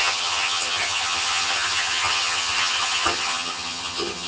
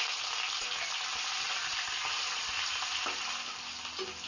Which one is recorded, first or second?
second